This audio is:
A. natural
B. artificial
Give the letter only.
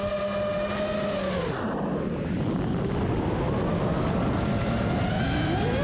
A